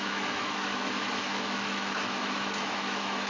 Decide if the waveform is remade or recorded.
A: remade